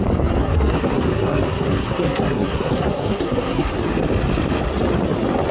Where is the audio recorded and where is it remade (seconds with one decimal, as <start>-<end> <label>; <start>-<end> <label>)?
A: 0.0-0.4 recorded; 0.4-3.7 remade; 3.7-5.5 recorded